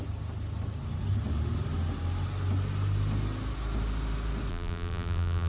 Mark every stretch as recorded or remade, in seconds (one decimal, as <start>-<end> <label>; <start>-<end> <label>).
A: 0.0-4.5 recorded; 4.5-5.5 remade